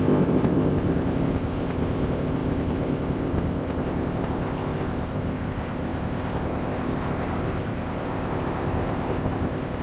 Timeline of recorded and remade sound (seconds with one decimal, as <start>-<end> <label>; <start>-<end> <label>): 0.0-9.8 remade